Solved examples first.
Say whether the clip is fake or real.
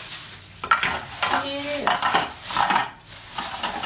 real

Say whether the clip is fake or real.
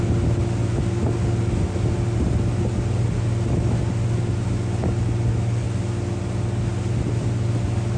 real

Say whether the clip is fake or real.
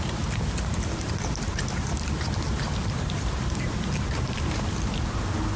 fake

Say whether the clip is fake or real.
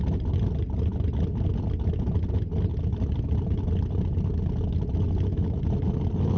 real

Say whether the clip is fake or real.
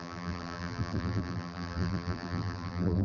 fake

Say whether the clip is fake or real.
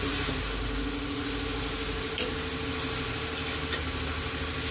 real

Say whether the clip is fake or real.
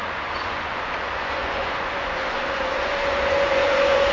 fake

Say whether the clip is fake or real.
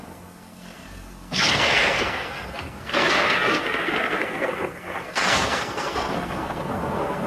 fake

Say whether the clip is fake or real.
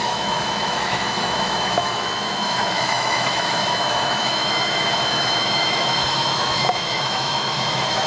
fake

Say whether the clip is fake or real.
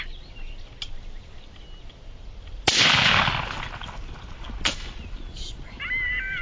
real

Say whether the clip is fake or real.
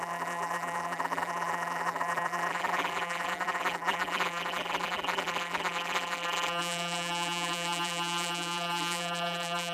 fake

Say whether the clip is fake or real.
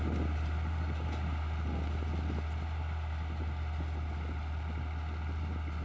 real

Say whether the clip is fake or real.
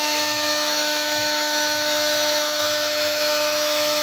fake